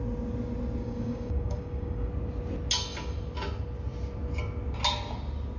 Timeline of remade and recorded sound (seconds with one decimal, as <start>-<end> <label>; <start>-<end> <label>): 0.0-0.8 recorded; 0.8-2.1 remade; 2.1-5.6 recorded